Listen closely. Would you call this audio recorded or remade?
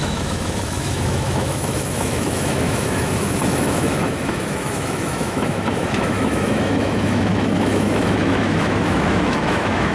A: remade